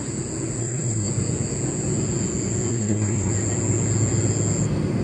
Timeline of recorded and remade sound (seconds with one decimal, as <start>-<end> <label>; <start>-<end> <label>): 0.0-0.6 recorded; 0.6-1.1 remade; 1.1-2.7 recorded; 2.7-3.3 remade; 3.3-5.0 recorded